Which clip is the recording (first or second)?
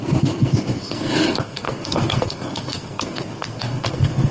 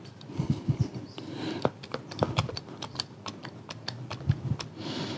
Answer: second